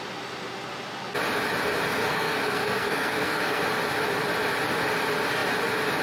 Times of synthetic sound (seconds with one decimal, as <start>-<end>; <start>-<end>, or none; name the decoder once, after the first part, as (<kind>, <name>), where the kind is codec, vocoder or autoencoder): 1.9-3.6 (codec, SNAC)